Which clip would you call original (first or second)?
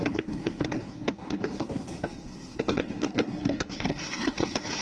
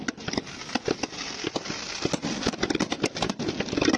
second